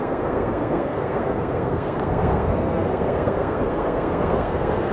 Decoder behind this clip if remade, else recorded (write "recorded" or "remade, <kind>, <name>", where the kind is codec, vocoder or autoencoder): remade, codec, SNAC